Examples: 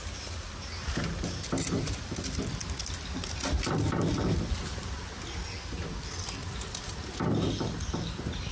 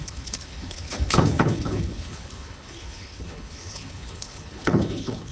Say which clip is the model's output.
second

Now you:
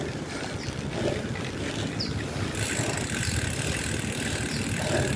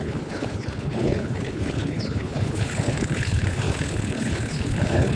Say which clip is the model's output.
second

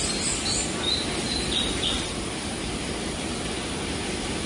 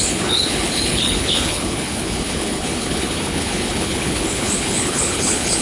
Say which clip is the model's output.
second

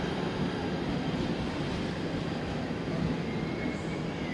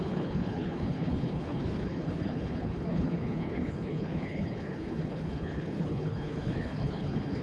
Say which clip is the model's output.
second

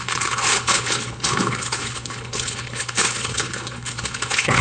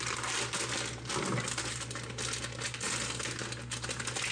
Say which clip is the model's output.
first